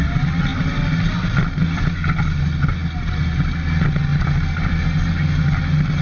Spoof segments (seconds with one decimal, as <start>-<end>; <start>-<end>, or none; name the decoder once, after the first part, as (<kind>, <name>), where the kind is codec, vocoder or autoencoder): none